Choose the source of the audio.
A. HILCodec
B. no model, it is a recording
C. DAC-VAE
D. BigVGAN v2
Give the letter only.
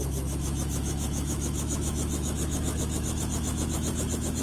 C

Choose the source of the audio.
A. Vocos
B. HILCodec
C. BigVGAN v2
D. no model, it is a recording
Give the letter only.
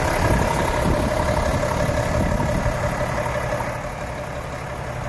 D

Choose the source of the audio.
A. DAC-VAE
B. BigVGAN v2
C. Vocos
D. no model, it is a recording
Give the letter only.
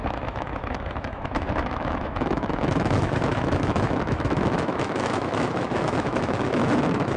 A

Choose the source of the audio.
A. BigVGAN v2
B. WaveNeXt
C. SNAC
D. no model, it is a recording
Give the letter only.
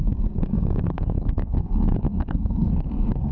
C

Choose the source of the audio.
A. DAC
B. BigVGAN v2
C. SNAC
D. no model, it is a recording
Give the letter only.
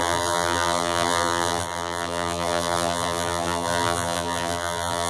B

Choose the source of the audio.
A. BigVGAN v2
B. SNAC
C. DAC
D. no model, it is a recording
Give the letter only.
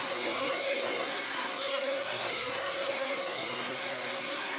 B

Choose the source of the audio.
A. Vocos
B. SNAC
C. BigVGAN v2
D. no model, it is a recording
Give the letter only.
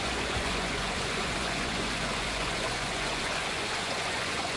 A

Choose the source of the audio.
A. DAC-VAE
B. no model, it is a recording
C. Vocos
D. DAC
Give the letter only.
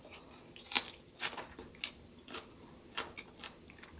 B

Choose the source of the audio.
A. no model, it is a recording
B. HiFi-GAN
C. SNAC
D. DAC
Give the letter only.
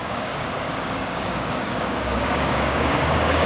D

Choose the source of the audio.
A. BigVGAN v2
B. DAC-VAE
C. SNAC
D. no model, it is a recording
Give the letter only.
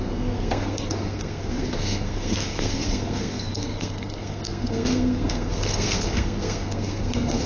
C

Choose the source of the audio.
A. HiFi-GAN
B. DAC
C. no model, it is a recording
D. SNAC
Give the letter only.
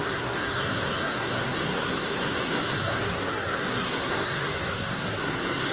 D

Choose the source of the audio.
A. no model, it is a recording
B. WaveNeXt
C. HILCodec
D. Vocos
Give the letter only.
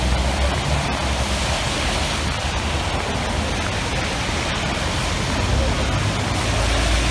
A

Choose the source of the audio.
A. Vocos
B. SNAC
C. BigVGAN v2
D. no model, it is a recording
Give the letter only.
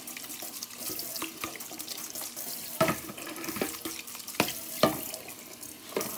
D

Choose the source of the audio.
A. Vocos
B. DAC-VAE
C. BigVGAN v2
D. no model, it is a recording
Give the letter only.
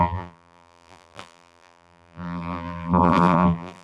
C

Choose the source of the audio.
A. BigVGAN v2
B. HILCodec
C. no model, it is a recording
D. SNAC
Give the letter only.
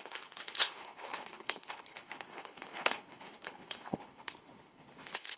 B